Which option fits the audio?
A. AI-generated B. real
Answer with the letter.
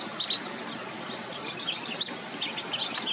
B